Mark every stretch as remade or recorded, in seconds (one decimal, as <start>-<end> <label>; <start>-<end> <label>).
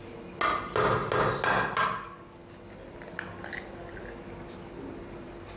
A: 0.0-5.6 recorded